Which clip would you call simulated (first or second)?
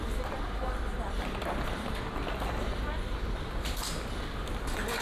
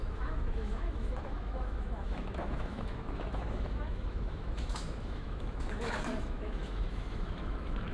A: second